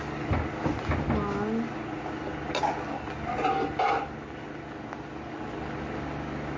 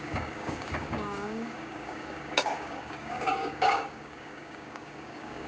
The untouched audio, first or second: first